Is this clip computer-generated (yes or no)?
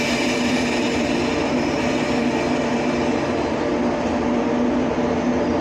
no